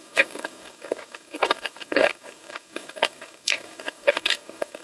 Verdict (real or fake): fake